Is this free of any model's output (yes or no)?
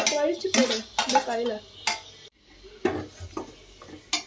yes